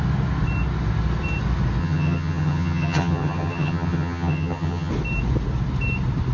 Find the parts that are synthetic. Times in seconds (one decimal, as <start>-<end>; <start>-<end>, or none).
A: 1.8-4.9